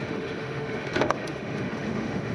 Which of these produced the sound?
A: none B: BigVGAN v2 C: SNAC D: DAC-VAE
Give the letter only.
D